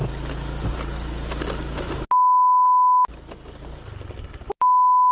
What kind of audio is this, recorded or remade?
recorded